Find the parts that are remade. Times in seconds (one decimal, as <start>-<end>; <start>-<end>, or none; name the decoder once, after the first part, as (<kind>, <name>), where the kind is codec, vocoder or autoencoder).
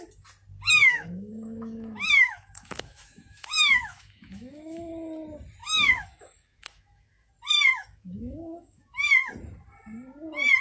0.8-4.9 (autoencoder, DAC-VAE); 5.6-7.3; 7.8-9.1